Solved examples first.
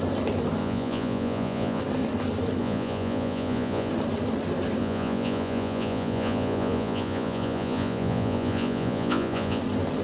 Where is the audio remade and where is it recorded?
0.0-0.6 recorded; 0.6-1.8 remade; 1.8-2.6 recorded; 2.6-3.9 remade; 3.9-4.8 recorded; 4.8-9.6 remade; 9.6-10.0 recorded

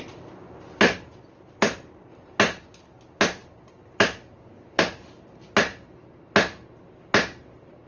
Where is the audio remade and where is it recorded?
0.0-3.4 recorded; 3.4-4.8 remade; 4.8-7.9 recorded

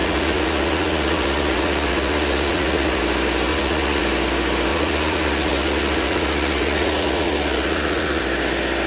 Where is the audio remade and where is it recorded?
0.0-3.0 remade; 3.0-3.5 recorded; 3.5-4.0 remade; 4.0-4.7 recorded; 4.7-8.2 remade; 8.2-8.9 recorded

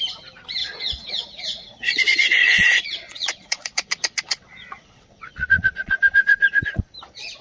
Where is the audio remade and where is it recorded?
0.0-0.6 recorded; 0.6-2.0 remade; 2.0-2.4 recorded; 2.4-6.8 remade; 6.8-7.4 recorded

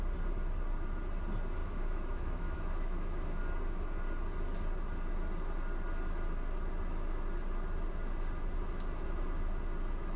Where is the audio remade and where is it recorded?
0.0-1.6 recorded; 1.6-3.4 remade; 3.4-10.2 recorded

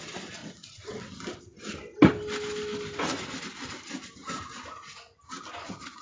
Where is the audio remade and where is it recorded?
0.0-0.4 recorded; 0.4-1.1 remade; 1.1-6.0 recorded

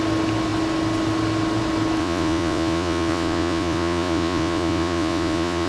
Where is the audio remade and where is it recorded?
0.0-2.0 recorded; 2.0-5.7 remade